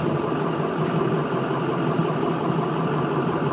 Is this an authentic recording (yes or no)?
yes